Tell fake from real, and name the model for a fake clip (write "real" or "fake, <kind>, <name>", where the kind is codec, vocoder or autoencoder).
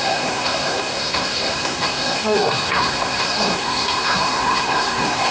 fake, codec, SNAC